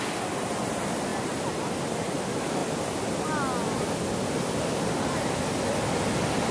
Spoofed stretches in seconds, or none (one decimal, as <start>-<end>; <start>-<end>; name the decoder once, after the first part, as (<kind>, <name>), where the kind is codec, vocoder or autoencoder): none

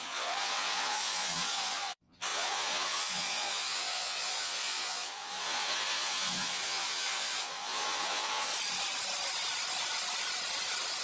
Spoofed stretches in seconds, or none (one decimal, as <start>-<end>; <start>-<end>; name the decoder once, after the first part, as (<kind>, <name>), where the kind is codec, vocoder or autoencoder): 0.0-8.5 (vocoder, Vocos)

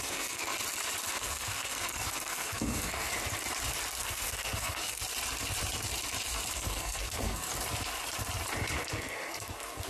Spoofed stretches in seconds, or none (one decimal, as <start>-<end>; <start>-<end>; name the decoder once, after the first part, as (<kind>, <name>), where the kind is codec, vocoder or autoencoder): 0.0-0.5 (codec, SNAC); 1.1-3.1; 4.0-5.0; 6.5-7.5; 8.8-9.9

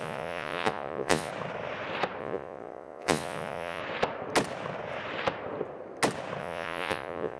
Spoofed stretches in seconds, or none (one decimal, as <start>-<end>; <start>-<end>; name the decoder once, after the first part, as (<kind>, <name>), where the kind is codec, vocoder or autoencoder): 0.0-1.3 (vocoder, Vocos); 2.2-3.8; 6.4-7.4